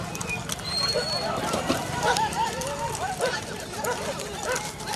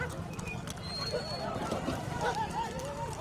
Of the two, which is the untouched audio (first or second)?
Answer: second